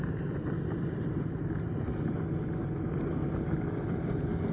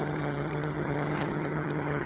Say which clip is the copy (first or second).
second